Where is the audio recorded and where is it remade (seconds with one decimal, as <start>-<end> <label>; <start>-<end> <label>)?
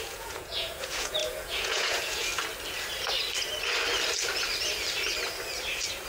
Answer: 0.0-2.3 remade; 2.3-6.1 recorded